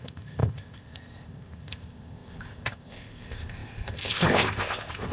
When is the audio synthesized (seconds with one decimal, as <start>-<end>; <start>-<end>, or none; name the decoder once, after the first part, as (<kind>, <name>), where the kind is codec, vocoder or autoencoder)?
0.0-5.1 (codec, ZipCodec)